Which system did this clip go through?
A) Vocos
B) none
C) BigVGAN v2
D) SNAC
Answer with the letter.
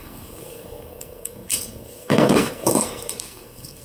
D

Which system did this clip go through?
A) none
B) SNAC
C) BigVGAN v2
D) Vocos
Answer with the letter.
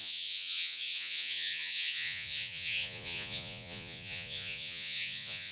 D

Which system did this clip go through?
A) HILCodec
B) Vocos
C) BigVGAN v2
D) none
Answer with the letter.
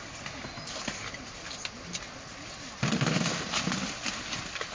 D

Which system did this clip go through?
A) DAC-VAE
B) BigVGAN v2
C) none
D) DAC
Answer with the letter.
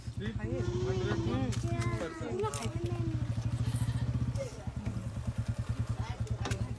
C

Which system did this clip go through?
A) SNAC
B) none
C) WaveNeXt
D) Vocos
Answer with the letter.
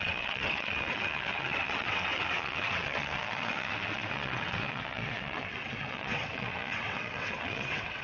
C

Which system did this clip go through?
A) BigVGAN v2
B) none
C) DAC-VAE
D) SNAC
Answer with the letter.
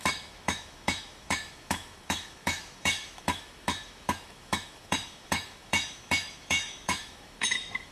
C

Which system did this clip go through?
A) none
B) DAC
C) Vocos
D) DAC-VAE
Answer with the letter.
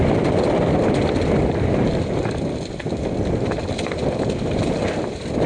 A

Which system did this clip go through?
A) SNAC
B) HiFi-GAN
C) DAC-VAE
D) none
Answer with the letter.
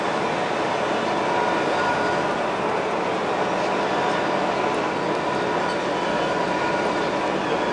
D